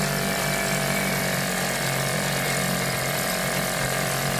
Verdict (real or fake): fake